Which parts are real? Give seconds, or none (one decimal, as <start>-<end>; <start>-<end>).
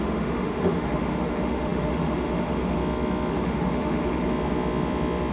2.8-3.3; 4.3-5.3